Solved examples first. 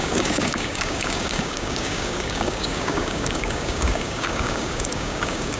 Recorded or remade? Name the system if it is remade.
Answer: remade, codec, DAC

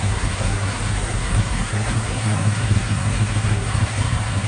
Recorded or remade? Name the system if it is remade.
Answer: remade, codec, SNAC